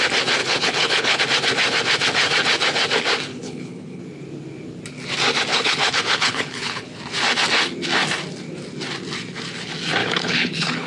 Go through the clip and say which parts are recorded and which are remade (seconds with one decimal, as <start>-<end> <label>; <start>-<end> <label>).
0.0-0.4 recorded; 0.4-1.2 remade; 1.2-3.3 recorded; 3.3-4.0 remade; 4.0-5.5 recorded; 5.5-7.0 remade; 7.0-10.0 recorded; 10.0-10.9 remade